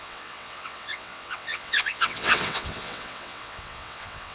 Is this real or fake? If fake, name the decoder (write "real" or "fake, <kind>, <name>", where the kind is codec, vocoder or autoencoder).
fake, vocoder, WaveNeXt